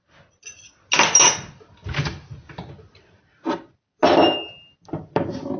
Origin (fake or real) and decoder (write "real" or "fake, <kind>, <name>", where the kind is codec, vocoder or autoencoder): real